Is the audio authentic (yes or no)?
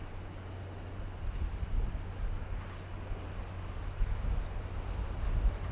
yes